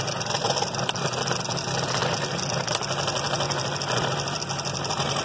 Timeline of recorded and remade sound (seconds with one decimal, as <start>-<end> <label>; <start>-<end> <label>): 0.0-5.2 recorded